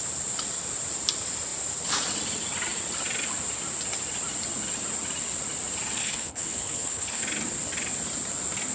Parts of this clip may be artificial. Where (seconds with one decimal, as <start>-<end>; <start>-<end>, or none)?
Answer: 6.0-7.2